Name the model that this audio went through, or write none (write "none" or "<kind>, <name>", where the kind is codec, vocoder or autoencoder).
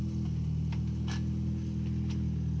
none